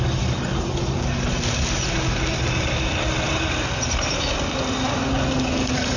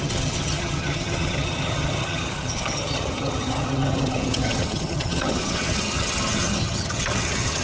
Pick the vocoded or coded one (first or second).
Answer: second